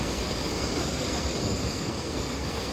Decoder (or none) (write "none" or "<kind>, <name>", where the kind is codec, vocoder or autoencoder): codec, SNAC